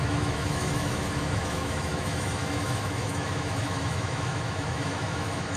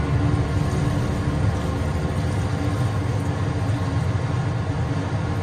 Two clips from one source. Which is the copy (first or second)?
first